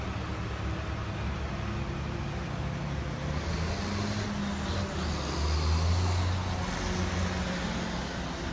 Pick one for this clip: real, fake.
real